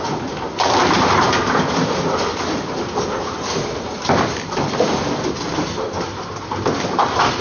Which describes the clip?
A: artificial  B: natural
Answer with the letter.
A